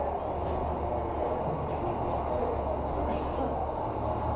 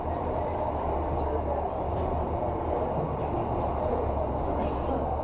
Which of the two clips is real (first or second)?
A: first